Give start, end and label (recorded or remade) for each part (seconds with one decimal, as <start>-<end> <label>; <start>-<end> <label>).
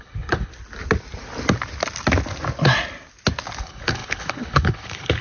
0.0-0.5 remade; 0.5-3.6 recorded; 3.6-5.2 remade